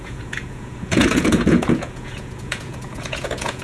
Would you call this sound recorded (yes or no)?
no